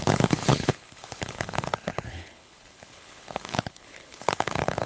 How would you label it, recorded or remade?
remade